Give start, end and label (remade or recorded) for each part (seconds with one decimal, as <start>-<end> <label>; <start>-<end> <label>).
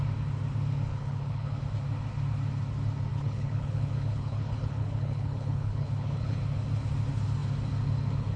0.0-0.9 recorded; 0.9-1.6 remade; 1.6-3.1 recorded; 3.1-6.4 remade; 6.4-8.4 recorded